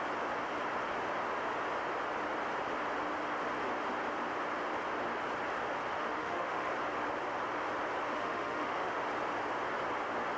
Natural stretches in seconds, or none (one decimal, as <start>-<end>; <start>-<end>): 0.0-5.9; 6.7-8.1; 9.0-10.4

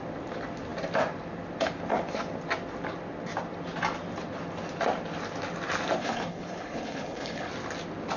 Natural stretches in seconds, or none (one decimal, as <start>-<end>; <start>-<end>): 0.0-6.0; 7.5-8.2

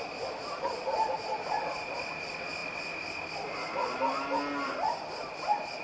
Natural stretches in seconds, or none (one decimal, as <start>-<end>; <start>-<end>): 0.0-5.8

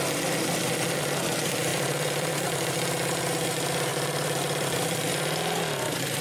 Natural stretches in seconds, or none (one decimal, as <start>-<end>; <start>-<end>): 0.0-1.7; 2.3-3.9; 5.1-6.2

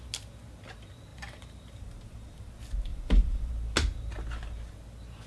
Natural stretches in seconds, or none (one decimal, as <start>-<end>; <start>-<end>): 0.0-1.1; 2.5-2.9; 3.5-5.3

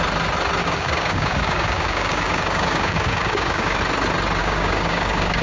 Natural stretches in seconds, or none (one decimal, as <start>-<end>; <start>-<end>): 0.0-0.6; 3.8-4.4